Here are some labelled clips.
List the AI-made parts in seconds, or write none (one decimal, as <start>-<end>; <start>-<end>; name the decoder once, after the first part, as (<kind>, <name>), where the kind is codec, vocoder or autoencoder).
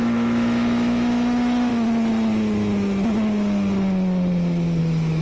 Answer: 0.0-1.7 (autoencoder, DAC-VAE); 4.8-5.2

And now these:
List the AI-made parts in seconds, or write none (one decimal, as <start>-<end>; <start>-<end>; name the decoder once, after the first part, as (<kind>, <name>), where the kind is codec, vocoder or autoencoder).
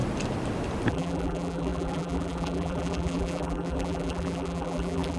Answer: 0.9-5.2 (vocoder, BigVGAN v2)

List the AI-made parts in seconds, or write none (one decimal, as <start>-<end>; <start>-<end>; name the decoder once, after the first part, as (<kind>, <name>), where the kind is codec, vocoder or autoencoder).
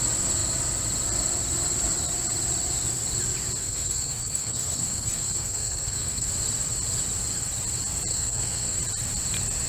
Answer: 3.6-6.3 (codec, SNAC); 8.1-8.8